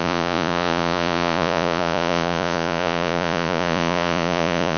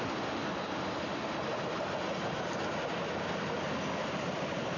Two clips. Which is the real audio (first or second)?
second